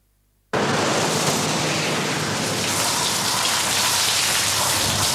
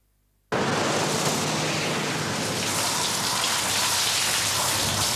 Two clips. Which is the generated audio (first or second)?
first